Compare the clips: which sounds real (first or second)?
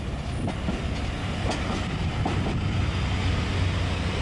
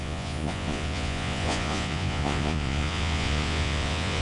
first